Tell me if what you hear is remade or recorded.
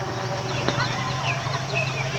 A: remade